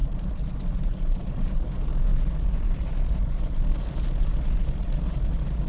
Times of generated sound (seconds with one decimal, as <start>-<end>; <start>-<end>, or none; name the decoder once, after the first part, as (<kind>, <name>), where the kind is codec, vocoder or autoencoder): none